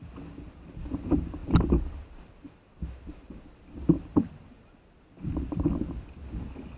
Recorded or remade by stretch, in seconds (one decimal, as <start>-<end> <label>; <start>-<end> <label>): 0.0-6.8 recorded